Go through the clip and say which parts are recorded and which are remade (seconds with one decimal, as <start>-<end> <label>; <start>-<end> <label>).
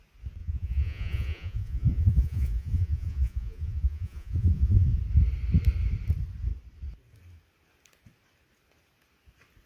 0.0-0.4 recorded; 0.4-5.0 remade; 5.0-9.7 recorded